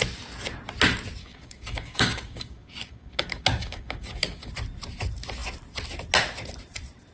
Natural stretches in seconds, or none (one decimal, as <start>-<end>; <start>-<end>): 0.0-1.2; 4.5-7.1